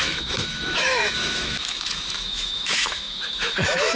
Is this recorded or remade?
remade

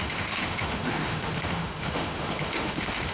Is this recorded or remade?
remade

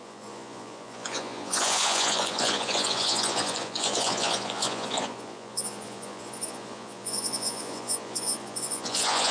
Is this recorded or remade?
remade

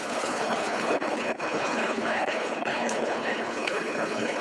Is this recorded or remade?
remade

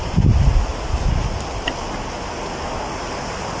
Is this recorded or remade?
recorded